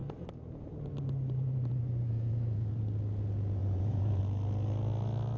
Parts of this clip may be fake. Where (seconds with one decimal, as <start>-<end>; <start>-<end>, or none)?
0.0-2.8; 3.6-4.2